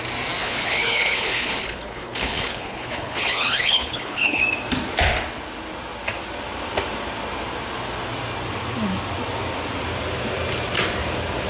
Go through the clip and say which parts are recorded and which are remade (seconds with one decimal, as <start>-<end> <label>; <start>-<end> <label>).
0.0-0.4 recorded; 0.4-4.4 remade; 4.4-11.5 recorded